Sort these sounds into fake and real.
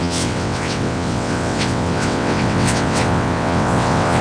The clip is fake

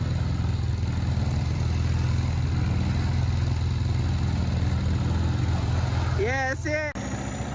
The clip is real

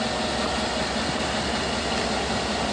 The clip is real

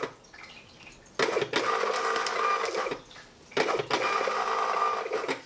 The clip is real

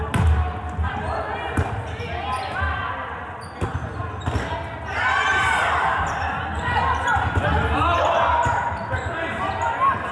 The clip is real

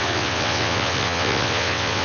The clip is fake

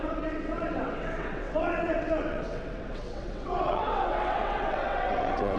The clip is fake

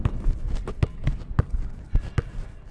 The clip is real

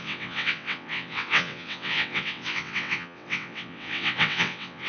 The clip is fake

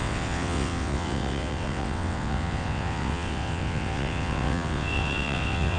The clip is fake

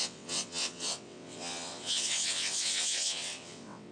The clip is fake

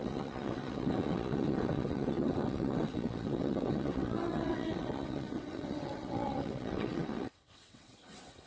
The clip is fake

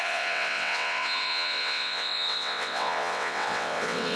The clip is fake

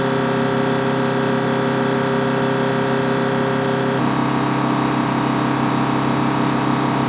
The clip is real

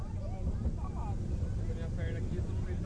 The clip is real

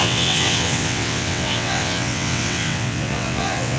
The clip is fake